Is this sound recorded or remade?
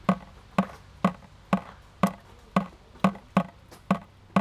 recorded